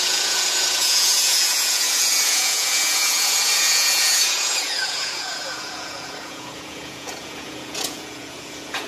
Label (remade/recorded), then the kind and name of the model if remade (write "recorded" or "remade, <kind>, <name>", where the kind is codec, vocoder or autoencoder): remade, vocoder, Vocos